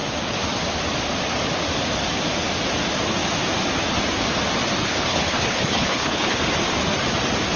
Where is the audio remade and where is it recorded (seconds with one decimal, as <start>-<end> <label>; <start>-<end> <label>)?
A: 0.0-4.8 recorded; 4.8-6.4 remade; 6.4-7.6 recorded